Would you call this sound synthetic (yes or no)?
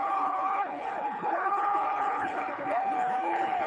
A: yes